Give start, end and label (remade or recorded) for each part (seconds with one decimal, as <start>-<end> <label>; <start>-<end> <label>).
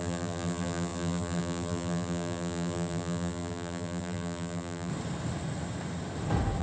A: 0.0-4.9 remade; 4.9-6.6 recorded